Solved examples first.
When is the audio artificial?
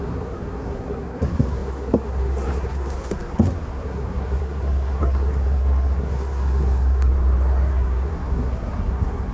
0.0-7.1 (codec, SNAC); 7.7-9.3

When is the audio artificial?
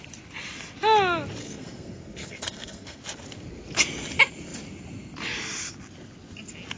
1.4-3.0 (codec, SNAC)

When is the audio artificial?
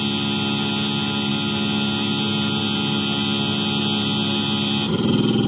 none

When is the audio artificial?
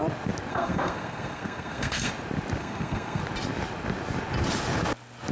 0.5-2.1 (codec, SNAC); 2.6-3.2